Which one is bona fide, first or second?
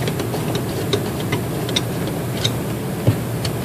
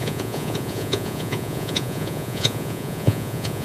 first